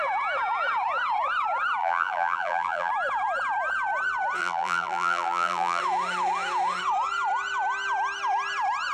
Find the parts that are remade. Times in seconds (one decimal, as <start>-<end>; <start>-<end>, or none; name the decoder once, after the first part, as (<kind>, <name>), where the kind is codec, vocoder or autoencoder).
1.8-2.9 (vocoder, BigVGAN v2); 4.4-5.8